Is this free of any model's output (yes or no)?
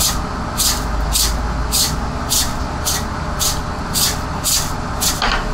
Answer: yes